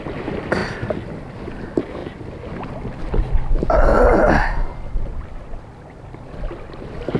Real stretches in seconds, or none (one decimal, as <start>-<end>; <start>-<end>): 0.0-7.2

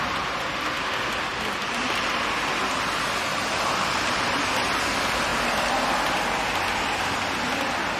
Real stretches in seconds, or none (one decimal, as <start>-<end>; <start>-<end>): 0.0-1.3; 2.1-3.3; 4.5-8.0

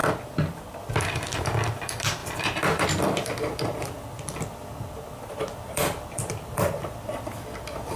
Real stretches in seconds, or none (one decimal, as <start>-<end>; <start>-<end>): none

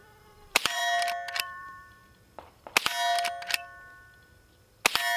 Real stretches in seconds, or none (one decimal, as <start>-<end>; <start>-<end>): 0.8-1.4; 2.0-5.2

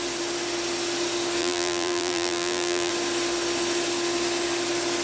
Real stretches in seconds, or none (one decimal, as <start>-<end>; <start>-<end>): 0.0-1.4; 2.9-5.0